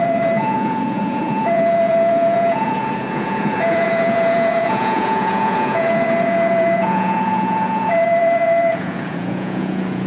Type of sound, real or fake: fake